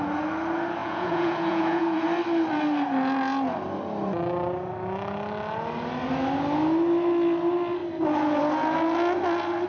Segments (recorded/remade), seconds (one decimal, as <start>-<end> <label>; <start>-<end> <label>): 0.0-0.8 recorded; 0.8-2.0 remade; 2.0-9.7 recorded